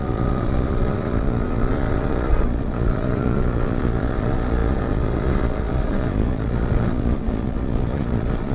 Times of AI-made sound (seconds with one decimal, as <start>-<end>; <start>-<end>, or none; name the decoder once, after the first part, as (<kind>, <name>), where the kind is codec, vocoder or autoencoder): 0.0-8.5 (vocoder, Vocos)